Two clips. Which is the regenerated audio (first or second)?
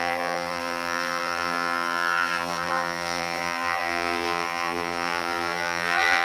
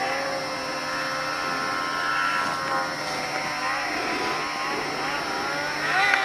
first